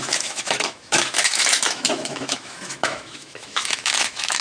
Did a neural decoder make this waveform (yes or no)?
yes